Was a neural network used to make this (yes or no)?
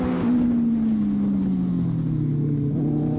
no